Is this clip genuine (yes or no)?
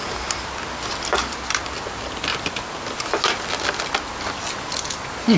yes